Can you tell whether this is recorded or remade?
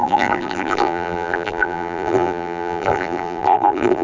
remade